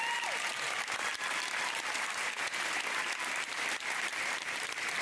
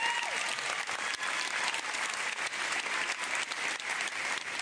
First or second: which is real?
second